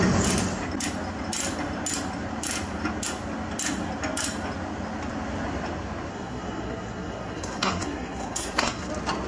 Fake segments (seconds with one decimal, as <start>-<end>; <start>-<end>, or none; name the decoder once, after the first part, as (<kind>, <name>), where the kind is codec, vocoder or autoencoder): 6.1-8.9 (codec, SNAC)